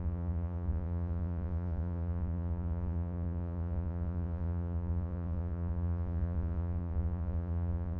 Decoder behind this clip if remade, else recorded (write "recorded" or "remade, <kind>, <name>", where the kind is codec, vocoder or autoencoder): remade, vocoder, Vocos